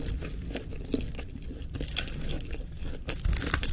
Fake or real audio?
real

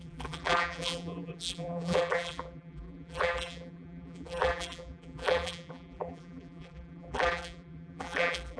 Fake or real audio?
fake